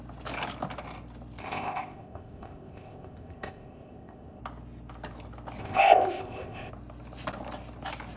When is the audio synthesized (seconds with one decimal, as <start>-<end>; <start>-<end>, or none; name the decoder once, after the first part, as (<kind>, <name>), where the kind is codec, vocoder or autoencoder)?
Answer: 1.4-4.4 (codec, ZipCodec); 5.6-6.7